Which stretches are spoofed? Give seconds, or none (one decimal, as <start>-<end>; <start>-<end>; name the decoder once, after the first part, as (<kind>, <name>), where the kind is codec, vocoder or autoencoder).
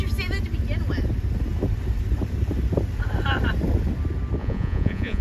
4.4-5.2 (vocoder, Vocos)